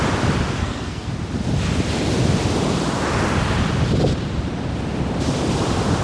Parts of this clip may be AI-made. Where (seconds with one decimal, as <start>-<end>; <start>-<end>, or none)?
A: 0.6-1.1